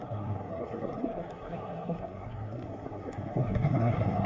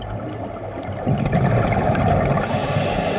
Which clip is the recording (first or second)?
second